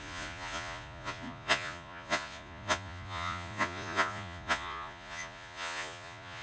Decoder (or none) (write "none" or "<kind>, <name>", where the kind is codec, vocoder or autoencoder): vocoder, Vocos